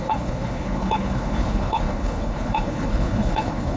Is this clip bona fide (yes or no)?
no